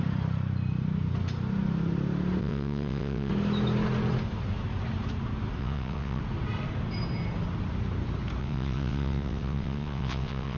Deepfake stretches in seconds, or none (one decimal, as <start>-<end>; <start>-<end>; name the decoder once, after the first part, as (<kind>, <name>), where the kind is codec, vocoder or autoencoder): 2.4-3.3 (vocoder, WaveNeXt); 5.6-6.2; 8.4-10.6